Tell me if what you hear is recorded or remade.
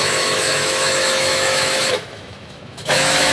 remade